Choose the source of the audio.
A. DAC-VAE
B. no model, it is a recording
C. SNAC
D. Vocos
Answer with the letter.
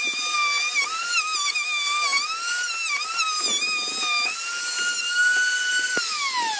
B